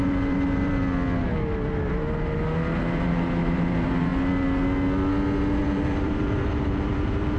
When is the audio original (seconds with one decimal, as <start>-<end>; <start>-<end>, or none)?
0.8-2.8; 4.1-5.6